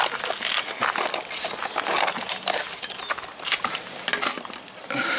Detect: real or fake real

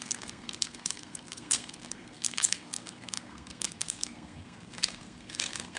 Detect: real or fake fake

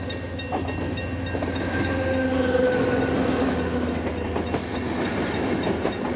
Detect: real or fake real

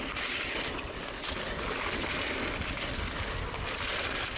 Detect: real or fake real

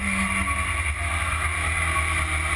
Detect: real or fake real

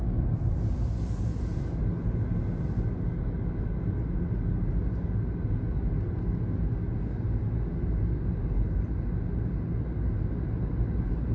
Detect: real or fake real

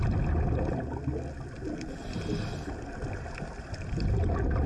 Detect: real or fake real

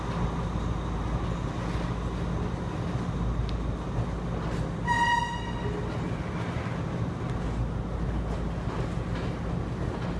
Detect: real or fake real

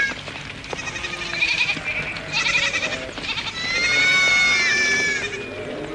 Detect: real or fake real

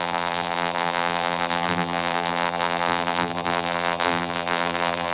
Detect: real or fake fake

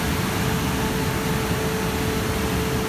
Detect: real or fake real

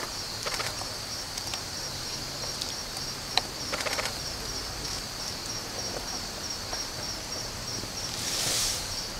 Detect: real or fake fake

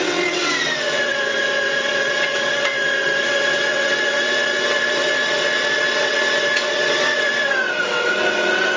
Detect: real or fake fake